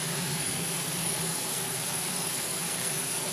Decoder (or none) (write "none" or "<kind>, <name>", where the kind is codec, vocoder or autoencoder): codec, SNAC